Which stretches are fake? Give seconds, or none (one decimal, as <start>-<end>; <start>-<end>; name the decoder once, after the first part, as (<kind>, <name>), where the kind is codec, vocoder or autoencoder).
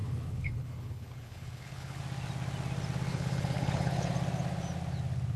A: 0.0-2.0 (codec, HILCodec); 3.1-4.1